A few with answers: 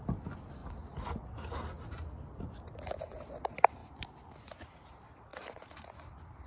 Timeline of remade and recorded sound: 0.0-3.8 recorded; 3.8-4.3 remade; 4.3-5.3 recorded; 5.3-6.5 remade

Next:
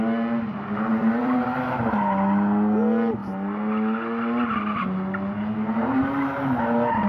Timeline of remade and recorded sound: 0.0-0.9 recorded; 0.9-1.6 remade; 1.6-7.1 recorded

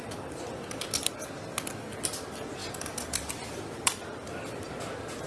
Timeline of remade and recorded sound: 0.0-2.6 recorded; 2.6-4.8 remade; 4.8-5.3 recorded

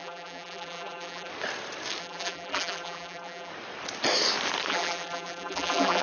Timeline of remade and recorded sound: 0.0-1.3 remade; 1.3-2.0 recorded; 2.0-3.5 remade; 3.5-4.7 recorded; 4.7-6.0 remade

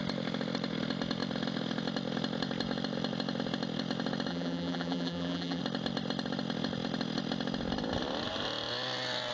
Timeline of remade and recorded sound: 0.0-4.3 recorded; 4.3-5.6 remade; 5.6-9.3 recorded

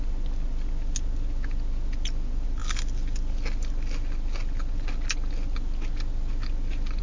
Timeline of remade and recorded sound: 0.0-7.0 recorded

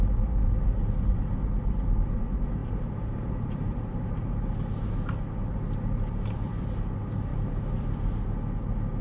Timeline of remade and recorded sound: 0.0-2.6 recorded; 2.6-4.5 remade; 4.5-9.0 recorded

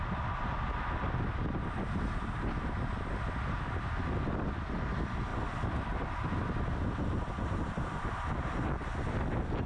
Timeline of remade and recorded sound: 0.0-5.3 recorded; 5.3-8.1 remade; 8.1-8.9 recorded; 8.9-9.7 remade